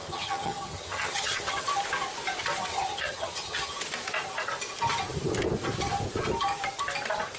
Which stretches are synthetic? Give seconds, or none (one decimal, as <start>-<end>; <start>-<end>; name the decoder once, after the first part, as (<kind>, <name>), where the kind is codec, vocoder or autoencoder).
0.0-1.6 (vocoder, HiFi-GAN); 2.7-3.7